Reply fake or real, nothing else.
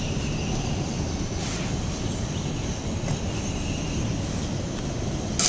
real